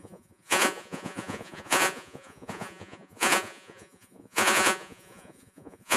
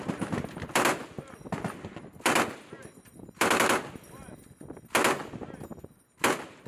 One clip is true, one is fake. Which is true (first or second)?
second